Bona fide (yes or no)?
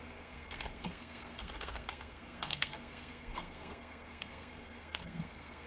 no